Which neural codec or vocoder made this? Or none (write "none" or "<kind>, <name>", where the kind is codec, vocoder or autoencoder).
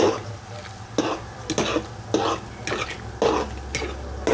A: none